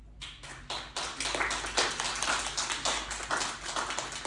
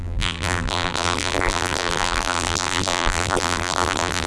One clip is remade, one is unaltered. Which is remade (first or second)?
second